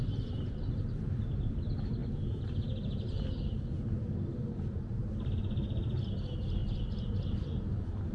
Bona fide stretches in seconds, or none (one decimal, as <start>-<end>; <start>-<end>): 0.0-6.6